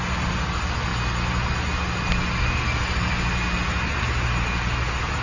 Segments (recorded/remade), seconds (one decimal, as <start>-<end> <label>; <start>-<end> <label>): 0.0-5.2 recorded